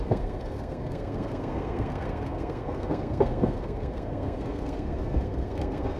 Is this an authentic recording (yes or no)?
no